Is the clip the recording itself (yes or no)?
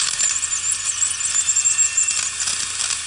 yes